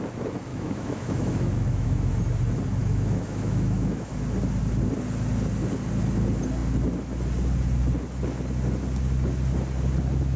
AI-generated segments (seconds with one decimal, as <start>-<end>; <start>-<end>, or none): 0.5-2.1; 2.8-4.1